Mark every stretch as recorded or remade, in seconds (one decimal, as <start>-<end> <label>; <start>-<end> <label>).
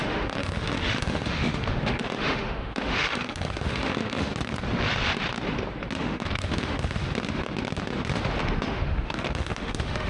0.0-4.3 remade; 4.3-6.0 recorded; 6.0-7.0 remade; 7.0-8.4 recorded; 8.4-10.1 remade